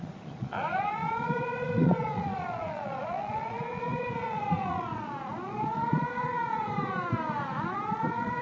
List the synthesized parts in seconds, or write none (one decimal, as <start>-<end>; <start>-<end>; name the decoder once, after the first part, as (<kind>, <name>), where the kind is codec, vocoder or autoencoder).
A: 0.0-8.4 (vocoder, Vocos)